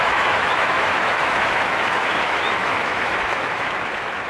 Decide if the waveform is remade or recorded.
remade